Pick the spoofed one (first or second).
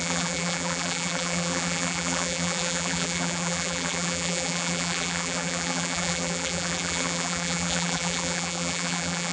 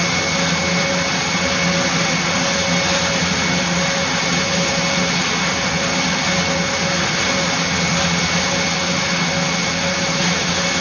first